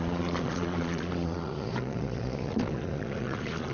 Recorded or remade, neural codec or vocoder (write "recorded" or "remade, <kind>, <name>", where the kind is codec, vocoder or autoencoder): remade, vocoder, Vocos